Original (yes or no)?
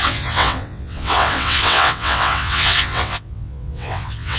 no